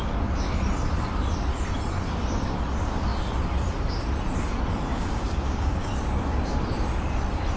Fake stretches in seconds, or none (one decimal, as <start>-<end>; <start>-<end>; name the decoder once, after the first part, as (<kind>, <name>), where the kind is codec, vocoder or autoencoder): 4.9-5.9 (codec, DAC)